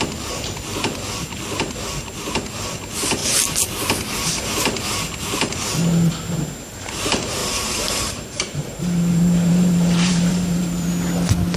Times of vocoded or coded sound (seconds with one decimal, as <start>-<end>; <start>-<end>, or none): 7.4-10.9